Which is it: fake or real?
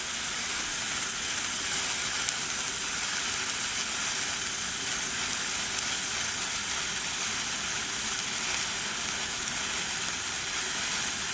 real